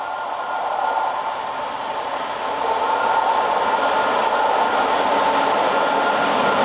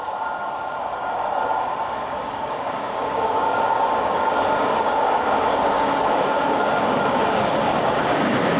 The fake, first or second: second